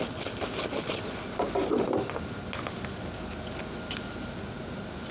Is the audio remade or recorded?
recorded